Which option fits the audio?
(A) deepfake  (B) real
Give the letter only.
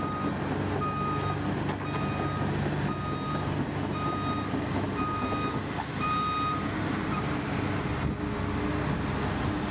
B